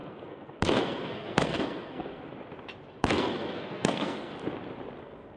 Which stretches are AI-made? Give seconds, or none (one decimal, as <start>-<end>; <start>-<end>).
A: 0.0-2.3; 3.0-4.3; 5.0-5.4